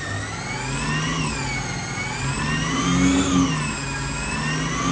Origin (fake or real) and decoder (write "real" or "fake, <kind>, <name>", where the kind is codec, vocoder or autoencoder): real